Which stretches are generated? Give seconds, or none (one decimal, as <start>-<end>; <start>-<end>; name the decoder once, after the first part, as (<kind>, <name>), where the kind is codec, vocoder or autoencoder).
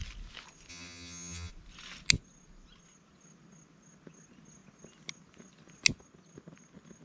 0.7-1.5 (vocoder, HiFi-GAN)